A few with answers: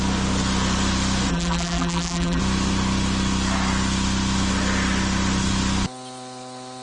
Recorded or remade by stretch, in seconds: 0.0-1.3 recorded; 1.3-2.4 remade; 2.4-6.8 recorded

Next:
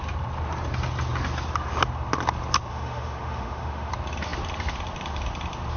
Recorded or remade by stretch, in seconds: 0.0-2.7 recorded; 2.7-3.9 remade; 3.9-5.8 recorded

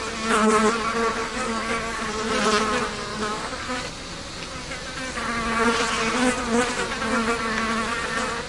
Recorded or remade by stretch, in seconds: 0.0-1.2 recorded; 1.2-2.0 remade; 2.0-3.1 recorded; 3.1-3.9 remade; 3.9-8.5 recorded

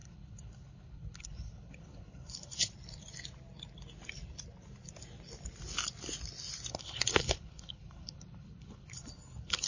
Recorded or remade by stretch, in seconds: 0.0-2.7 remade; 2.7-6.7 recorded; 6.7-9.7 remade

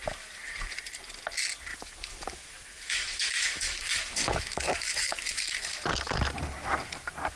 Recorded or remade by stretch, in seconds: 0.0-1.7 recorded; 1.7-5.4 remade; 5.4-7.4 recorded

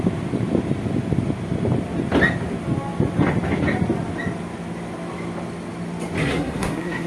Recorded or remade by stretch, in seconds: 0.0-6.2 recorded; 6.2-7.1 remade

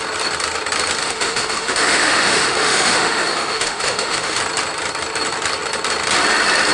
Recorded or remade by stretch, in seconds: 0.0-1.0 recorded; 1.0-4.4 remade; 4.4-6.7 recorded